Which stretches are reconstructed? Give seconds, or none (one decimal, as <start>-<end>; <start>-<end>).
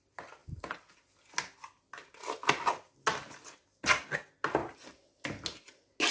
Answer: none